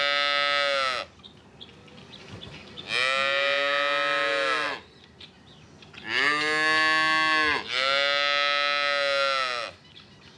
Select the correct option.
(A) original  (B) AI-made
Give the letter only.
A